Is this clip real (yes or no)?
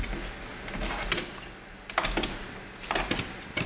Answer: yes